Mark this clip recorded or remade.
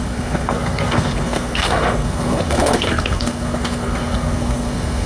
remade